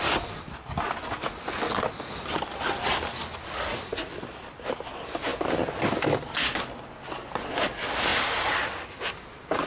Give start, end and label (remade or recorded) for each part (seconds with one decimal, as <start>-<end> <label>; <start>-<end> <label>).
0.0-9.7 recorded